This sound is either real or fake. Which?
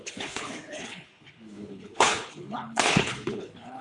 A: fake